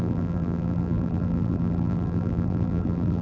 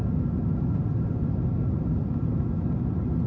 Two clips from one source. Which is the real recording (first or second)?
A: second